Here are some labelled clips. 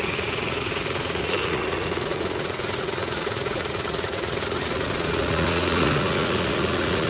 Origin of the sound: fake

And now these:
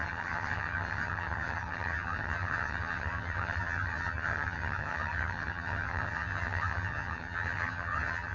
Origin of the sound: fake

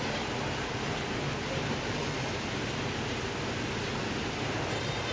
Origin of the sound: real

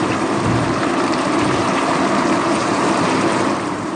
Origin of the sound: fake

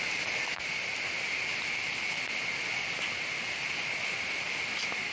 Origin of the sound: real